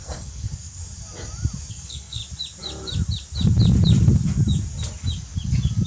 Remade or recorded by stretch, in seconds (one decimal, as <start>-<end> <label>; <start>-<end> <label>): 0.0-0.8 remade; 0.8-1.7 recorded; 1.7-2.2 remade; 2.2-5.9 recorded

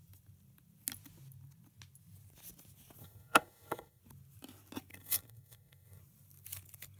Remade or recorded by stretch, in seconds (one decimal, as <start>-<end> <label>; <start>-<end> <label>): 0.0-3.0 recorded; 3.0-4.0 remade; 4.0-4.9 recorded; 4.9-6.0 remade; 6.0-7.0 recorded

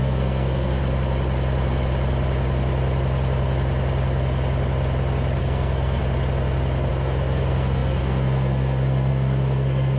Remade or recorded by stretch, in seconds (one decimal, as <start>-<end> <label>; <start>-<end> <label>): 0.0-0.8 remade; 0.8-5.4 recorded; 5.4-6.0 remade; 6.0-6.9 recorded; 6.9-10.0 remade

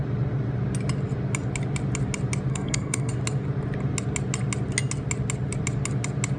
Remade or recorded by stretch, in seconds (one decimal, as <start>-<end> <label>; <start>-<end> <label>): 0.0-2.5 recorded; 2.5-3.1 remade; 3.1-6.4 recorded

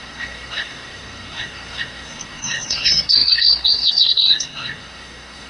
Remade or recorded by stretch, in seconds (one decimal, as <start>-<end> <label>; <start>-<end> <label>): 0.0-5.5 remade

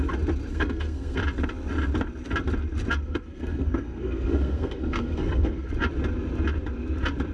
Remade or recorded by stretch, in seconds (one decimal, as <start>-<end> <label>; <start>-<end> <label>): 0.0-0.5 recorded; 0.5-1.2 remade; 1.2-3.0 recorded; 3.0-5.7 remade; 5.7-7.3 recorded

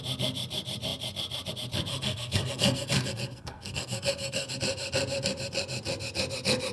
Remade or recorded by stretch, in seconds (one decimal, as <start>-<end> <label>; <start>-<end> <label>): 0.0-1.9 recorded; 1.9-4.5 remade; 4.5-6.7 recorded